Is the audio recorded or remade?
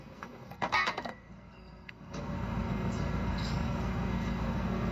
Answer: remade